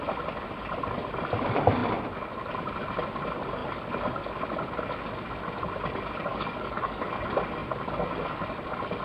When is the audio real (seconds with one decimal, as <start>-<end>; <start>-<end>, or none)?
0.0-6.3; 7.1-9.0